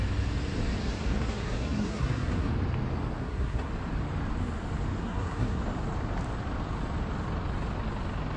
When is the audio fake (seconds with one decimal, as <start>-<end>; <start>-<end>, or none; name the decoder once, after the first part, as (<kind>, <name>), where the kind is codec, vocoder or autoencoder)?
0.8-2.5 (codec, SNAC); 3.2-3.7; 5.0-5.6